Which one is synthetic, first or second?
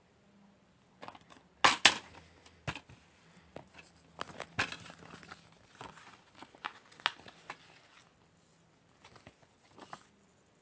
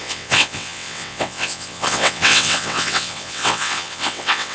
second